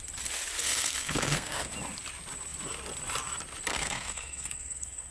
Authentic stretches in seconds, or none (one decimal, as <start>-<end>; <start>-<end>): 0.0-0.6; 1.7-3.7